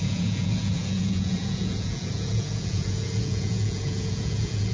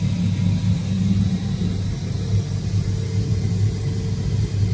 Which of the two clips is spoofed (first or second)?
first